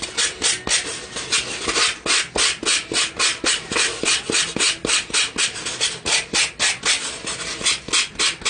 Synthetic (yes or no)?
no